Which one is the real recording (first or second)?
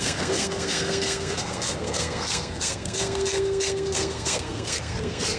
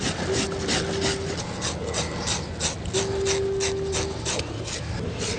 second